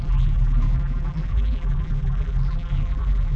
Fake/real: fake